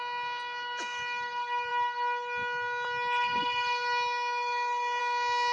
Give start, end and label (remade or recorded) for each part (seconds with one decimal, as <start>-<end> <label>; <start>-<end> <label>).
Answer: 0.0-5.5 recorded